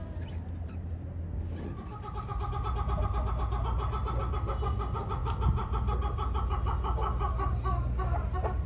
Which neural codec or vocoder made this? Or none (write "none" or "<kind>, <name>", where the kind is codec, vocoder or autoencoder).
none